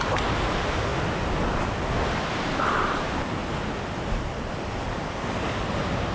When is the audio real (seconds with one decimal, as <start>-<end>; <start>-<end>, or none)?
0.9-2.6; 3.4-4.6